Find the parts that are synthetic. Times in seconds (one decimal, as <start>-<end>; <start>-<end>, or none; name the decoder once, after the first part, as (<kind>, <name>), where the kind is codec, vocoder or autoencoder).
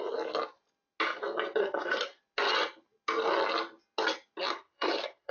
1.6-2.2 (codec, SNAC); 4.4-5.3